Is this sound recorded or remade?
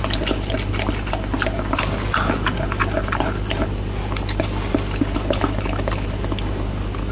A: recorded